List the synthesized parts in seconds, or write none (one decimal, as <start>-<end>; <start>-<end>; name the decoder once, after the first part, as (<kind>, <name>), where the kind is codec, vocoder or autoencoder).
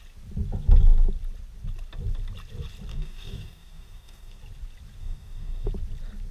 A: 2.9-4.4 (codec, DAC); 5.0-5.7